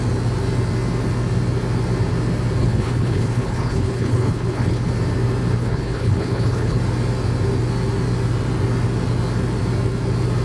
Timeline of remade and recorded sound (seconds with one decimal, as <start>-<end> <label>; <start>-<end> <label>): 0.0-2.6 recorded; 2.6-4.9 remade; 4.9-5.6 recorded; 5.6-6.8 remade; 6.8-10.4 recorded